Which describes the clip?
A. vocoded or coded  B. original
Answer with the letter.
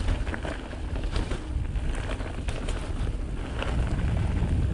B